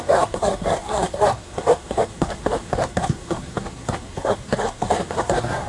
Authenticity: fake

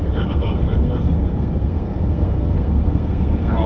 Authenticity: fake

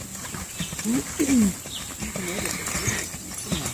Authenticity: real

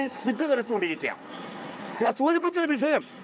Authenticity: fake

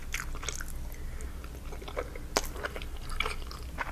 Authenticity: real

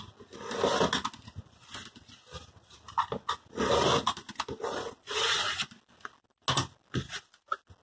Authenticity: real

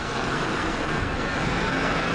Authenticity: fake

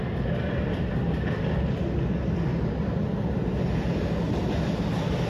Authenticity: real